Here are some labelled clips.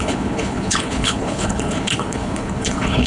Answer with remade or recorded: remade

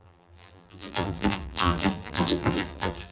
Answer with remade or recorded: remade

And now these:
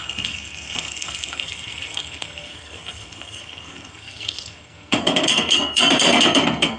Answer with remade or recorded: remade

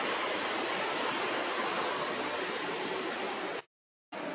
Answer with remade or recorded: recorded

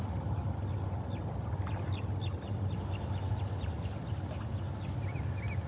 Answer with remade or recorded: recorded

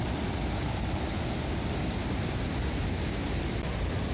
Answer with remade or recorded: recorded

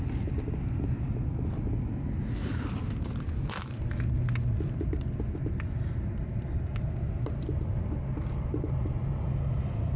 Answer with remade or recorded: recorded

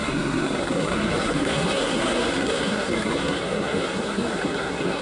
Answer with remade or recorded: remade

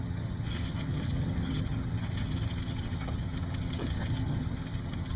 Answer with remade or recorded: remade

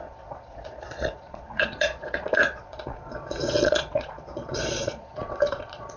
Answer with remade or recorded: remade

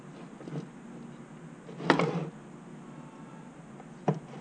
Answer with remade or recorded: recorded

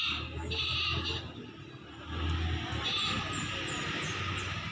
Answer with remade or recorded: recorded